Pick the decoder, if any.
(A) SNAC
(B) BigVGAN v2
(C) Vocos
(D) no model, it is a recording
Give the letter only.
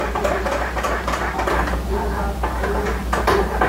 D